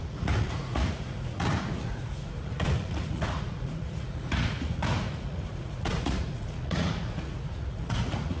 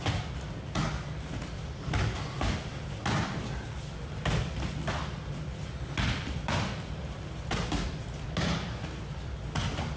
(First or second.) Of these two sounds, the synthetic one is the first